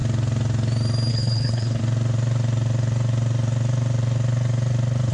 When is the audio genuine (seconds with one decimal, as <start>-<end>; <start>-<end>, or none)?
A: 0.0-1.1; 1.8-5.1